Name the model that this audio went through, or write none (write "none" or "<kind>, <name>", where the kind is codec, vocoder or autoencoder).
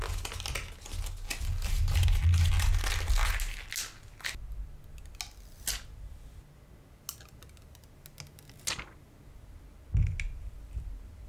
none